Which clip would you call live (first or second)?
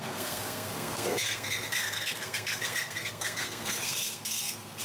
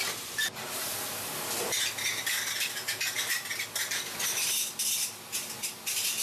second